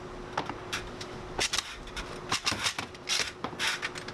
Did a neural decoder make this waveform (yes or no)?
no